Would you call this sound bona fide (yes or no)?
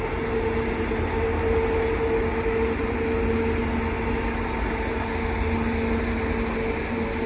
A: yes